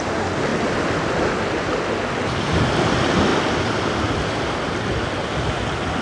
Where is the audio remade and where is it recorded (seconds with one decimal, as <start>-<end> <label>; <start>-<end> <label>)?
0.0-6.0 recorded